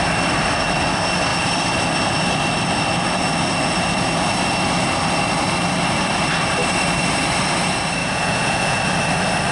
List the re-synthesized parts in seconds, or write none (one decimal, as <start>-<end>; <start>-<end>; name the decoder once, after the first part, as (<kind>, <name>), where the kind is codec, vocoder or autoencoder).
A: 8.0-8.8 (vocoder, Vocos)